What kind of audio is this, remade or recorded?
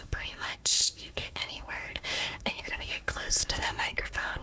remade